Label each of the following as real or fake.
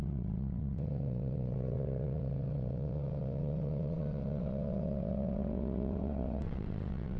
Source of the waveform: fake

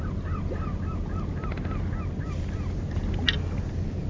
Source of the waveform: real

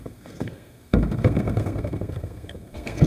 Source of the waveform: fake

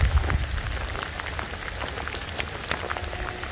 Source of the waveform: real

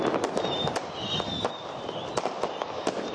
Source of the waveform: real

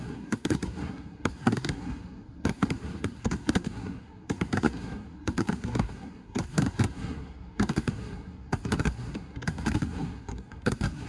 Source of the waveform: fake